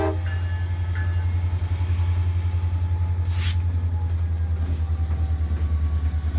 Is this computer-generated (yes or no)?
no